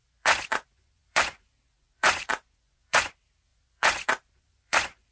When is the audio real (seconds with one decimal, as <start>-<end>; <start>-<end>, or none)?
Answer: 3.1-3.5